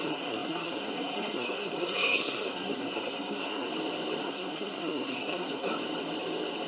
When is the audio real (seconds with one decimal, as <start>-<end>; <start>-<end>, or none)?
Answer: 3.7-4.2; 5.7-6.7